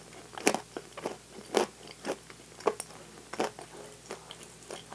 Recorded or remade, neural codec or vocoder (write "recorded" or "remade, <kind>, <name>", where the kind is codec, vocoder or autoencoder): recorded